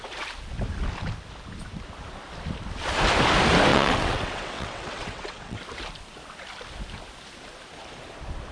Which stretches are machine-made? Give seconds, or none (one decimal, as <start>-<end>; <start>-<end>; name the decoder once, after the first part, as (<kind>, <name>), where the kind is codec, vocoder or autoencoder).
3.7-5.6 (vocoder, WaveNeXt)